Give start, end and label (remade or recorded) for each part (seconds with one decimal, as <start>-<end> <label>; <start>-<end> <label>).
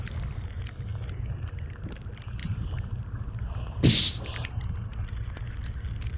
0.0-2.4 recorded; 2.4-3.8 remade; 3.8-6.2 recorded